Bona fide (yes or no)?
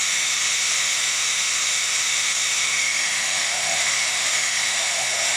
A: no